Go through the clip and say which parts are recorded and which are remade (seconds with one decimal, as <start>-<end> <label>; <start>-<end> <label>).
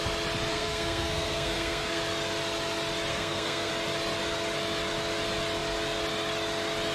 0.0-0.5 recorded; 0.5-2.0 remade; 2.0-3.1 recorded; 3.1-3.7 remade; 3.7-6.9 recorded